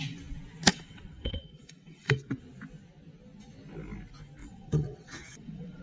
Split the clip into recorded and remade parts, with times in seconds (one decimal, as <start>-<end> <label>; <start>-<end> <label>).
0.0-0.7 recorded; 0.7-2.4 remade; 2.4-4.4 recorded; 4.4-5.8 remade